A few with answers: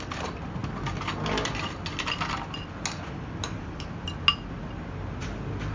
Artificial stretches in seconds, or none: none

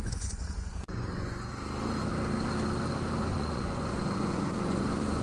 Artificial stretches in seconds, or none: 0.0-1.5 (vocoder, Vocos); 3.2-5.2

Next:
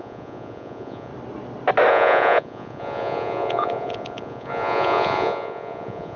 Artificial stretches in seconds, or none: 0.0-1.1 (vocoder, Vocos); 1.9-6.2

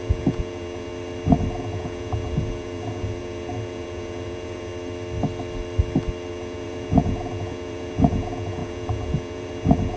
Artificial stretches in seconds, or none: 0.0-0.9 (vocoder, Vocos); 1.6-4.7; 6.3-10.0